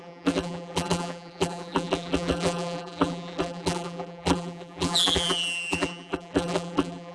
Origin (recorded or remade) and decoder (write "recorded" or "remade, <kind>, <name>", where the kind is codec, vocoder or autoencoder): remade, vocoder, BigVGAN v2